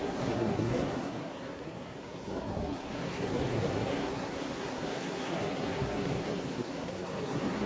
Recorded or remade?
remade